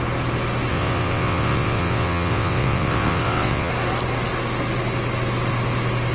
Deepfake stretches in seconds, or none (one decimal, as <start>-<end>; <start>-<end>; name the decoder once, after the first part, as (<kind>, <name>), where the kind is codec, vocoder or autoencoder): 0.7-3.7 (vocoder, WaveNeXt)